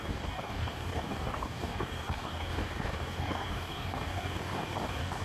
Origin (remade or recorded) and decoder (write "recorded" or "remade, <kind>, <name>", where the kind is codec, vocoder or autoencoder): remade, codec, DAC